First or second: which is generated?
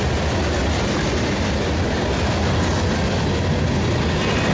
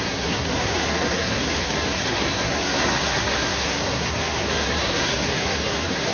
second